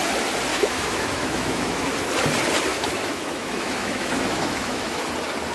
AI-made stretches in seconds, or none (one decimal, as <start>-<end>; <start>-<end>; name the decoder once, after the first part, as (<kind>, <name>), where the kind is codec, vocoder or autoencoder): 0.5-1.9 (autoencoder, DAC-VAE); 2.7-5.1